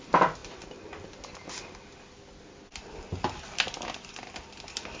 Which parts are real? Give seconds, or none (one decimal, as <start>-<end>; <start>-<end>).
0.0-5.0